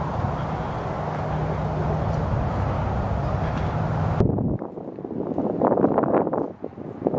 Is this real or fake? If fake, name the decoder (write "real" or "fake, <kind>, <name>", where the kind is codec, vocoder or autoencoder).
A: real